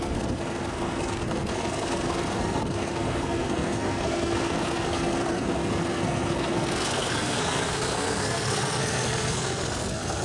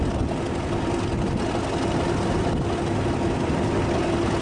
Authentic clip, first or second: second